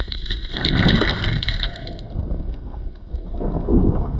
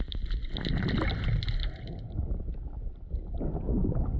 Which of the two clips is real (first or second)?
second